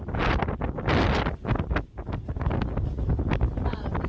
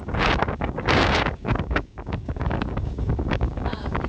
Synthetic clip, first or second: second